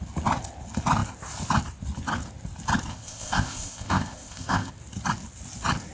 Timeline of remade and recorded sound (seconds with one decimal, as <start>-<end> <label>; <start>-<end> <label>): 0.0-2.9 recorded; 2.9-4.7 remade; 4.7-5.9 recorded

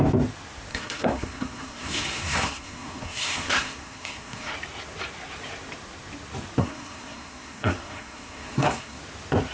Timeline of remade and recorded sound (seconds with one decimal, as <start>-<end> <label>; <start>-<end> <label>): 0.0-0.7 recorded; 0.7-4.5 remade; 4.5-6.6 recorded; 6.6-9.0 remade; 9.0-9.5 recorded

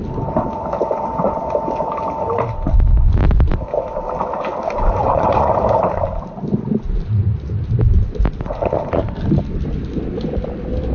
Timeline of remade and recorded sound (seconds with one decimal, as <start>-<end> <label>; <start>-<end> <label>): 0.0-5.0 recorded; 5.0-5.5 remade; 5.5-10.9 recorded

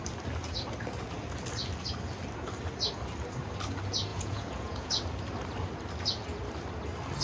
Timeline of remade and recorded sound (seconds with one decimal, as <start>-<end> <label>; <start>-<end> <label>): 0.0-4.1 recorded; 4.1-4.9 remade; 4.9-7.2 recorded

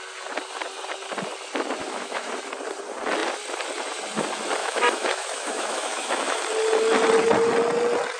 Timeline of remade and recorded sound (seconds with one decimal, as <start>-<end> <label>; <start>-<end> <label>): 0.0-1.8 recorded; 1.8-2.3 remade; 2.3-4.6 recorded; 4.6-6.4 remade; 6.4-8.2 recorded

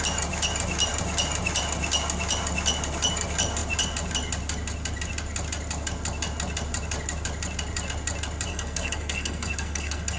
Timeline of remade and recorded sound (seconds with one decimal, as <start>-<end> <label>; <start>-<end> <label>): 0.0-8.5 recorded; 8.5-10.2 remade

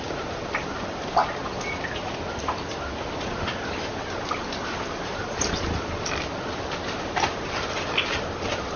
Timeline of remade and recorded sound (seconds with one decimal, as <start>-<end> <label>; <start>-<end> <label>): 0.0-8.8 recorded

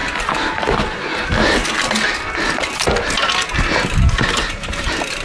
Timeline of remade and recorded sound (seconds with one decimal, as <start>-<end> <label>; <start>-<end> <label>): 0.0-0.5 recorded; 0.5-1.1 remade; 1.1-4.2 recorded; 4.2-5.2 remade